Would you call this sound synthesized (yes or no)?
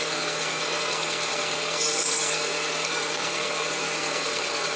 yes